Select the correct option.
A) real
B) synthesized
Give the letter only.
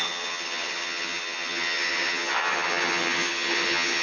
B